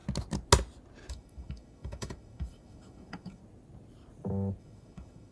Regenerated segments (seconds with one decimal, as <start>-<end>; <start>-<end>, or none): 1.1-3.4; 4.6-5.3